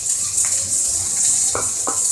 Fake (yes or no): yes